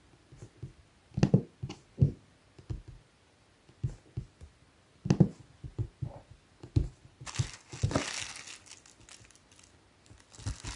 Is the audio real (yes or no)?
yes